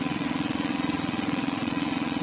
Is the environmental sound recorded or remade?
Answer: remade